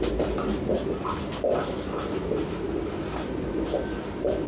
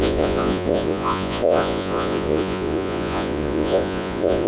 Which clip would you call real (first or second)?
first